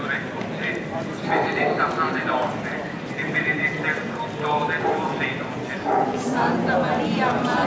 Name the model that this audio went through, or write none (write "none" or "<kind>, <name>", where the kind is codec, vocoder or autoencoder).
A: none